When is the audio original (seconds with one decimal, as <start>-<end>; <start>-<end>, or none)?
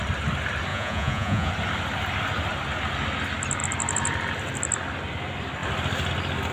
0.0-0.7; 1.5-6.5